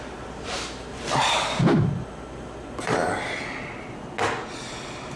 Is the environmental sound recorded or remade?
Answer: recorded